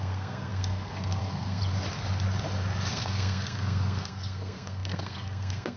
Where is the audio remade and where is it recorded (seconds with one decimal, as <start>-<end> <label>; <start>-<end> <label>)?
0.0-1.6 remade; 1.6-2.9 recorded; 2.9-5.8 remade